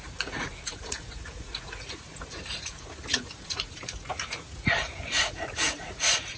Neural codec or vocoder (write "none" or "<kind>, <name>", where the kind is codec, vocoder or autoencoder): vocoder, Vocos